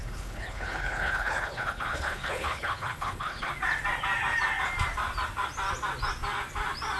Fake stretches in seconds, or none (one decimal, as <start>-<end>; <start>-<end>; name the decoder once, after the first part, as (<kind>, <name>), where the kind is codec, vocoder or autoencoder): 0.0-3.5 (codec, HILCodec)